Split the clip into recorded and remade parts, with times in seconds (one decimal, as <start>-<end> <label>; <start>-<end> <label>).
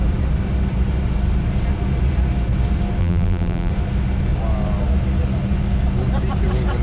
0.0-3.0 recorded; 3.0-3.7 remade; 3.7-6.8 recorded